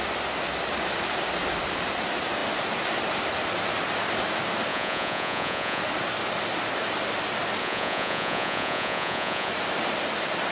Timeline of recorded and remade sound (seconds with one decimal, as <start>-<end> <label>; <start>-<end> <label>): 0.0-4.7 recorded; 4.7-5.8 remade; 5.8-7.6 recorded; 7.6-9.5 remade; 9.5-10.5 recorded